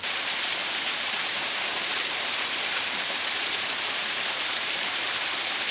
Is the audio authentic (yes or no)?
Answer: no